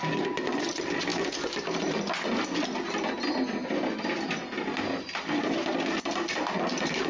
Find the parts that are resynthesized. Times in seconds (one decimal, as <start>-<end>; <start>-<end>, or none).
none